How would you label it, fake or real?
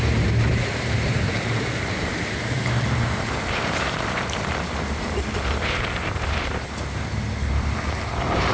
fake